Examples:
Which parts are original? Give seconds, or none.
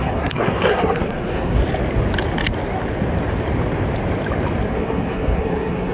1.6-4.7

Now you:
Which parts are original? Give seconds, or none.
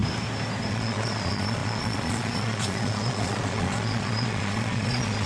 0.0-0.7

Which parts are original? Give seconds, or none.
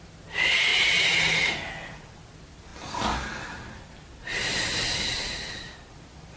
0.0-0.7; 1.5-6.4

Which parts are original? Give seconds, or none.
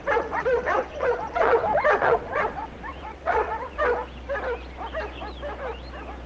3.8-6.3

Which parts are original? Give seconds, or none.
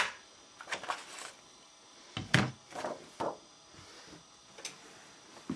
0.0-5.6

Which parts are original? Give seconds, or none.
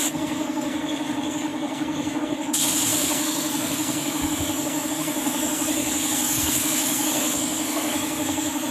none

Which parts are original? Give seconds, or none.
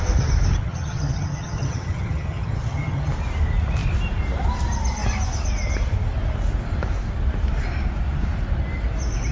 0.0-0.6; 3.1-9.3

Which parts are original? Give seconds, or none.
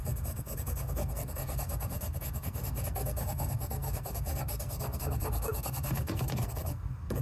none